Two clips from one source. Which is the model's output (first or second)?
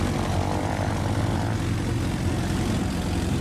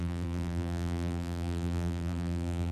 second